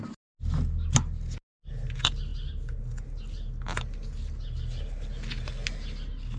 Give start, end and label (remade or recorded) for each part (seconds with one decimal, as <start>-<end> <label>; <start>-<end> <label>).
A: 0.0-6.4 recorded